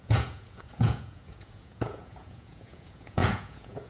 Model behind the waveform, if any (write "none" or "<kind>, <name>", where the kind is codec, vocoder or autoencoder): vocoder, Vocos